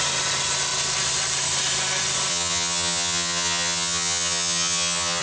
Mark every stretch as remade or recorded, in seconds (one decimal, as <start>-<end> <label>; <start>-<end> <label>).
0.0-2.3 recorded; 2.3-5.2 remade

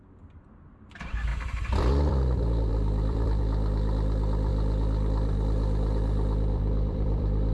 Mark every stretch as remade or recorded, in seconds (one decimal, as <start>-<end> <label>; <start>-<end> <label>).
0.0-1.3 recorded; 1.3-2.1 remade; 2.1-2.7 recorded; 2.7-3.4 remade; 3.4-4.5 recorded; 4.5-7.5 remade

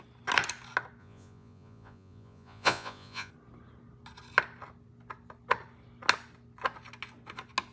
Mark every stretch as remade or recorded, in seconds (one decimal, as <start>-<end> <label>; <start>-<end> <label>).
0.0-1.0 recorded; 1.0-3.3 remade; 3.3-7.7 recorded

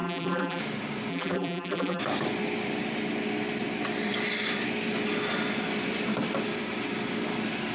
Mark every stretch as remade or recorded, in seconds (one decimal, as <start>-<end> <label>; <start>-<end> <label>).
0.0-0.6 remade; 0.6-1.1 recorded; 1.1-2.0 remade; 2.0-7.7 recorded

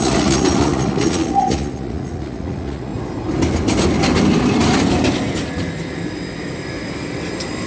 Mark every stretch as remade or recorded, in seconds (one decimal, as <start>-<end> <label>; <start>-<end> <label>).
0.0-2.9 remade; 2.9-7.7 recorded

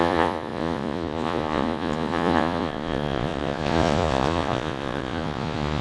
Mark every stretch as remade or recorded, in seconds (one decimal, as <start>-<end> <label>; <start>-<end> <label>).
0.0-5.8 remade

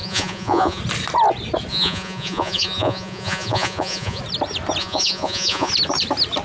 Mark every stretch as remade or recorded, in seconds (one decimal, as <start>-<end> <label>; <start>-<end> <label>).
0.0-0.8 remade; 0.8-1.7 recorded; 1.7-4.2 remade; 4.2-4.8 recorded; 4.8-5.7 remade; 5.7-6.4 recorded

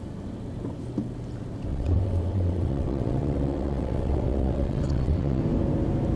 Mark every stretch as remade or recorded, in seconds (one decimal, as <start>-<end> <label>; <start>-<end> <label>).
0.0-1.7 recorded; 1.7-5.4 remade; 5.4-6.2 recorded